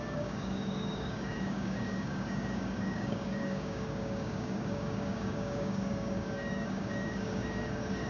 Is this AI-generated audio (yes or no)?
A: yes